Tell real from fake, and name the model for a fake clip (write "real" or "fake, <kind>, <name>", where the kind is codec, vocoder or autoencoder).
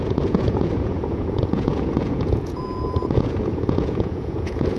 fake, vocoder, Vocos